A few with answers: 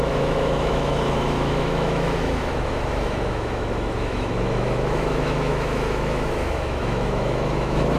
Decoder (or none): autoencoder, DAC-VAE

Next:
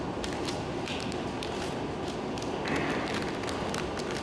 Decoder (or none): none